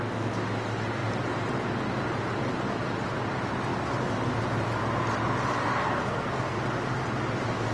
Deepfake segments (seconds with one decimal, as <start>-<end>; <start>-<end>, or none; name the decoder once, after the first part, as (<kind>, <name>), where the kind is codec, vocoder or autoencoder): 5.6-6.6 (codec, SNAC)